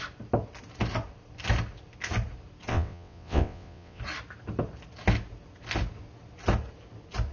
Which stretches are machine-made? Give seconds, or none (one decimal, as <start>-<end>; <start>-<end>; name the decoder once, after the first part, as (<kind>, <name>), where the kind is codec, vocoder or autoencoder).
2.7-4.0 (vocoder, WaveNeXt)